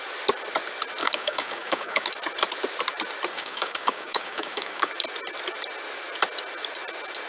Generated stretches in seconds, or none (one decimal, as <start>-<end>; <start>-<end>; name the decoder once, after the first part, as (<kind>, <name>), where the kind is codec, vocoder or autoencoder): 1.0-2.1 (codec, DAC); 3.3-4.9